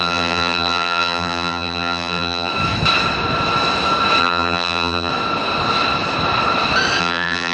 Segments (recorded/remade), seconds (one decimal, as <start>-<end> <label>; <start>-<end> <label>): 0.0-2.5 remade; 2.5-4.2 recorded; 4.2-5.1 remade; 5.1-7.0 recorded; 7.0-7.5 remade